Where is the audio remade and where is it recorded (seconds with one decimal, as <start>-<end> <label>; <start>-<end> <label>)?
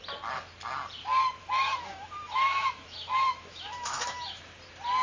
0.0-1.4 recorded; 1.4-4.4 remade; 4.4-5.0 recorded